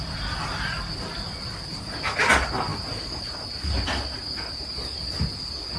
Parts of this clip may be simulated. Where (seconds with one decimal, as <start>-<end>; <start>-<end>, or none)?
2.7-3.6